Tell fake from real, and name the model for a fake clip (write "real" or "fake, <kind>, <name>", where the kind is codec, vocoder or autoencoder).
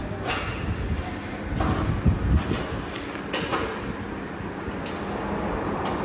real